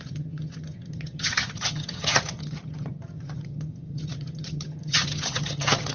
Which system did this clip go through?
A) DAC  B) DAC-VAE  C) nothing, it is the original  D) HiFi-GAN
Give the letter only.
D